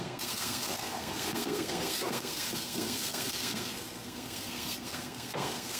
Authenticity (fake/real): fake